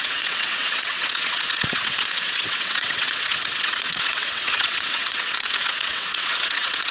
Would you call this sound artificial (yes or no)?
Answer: yes